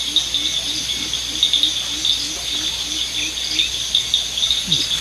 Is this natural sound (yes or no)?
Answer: yes